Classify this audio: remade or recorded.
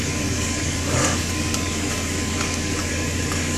remade